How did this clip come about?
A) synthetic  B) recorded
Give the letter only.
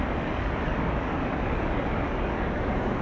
A